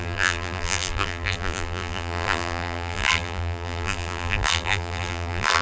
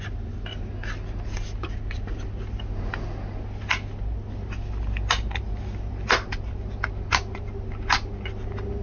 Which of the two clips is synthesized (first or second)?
first